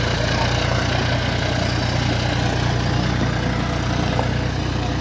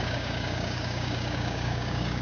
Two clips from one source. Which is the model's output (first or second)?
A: second